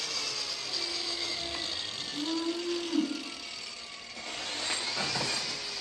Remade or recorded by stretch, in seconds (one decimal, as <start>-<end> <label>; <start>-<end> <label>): 0.0-0.9 recorded; 0.9-1.4 remade; 1.4-5.8 recorded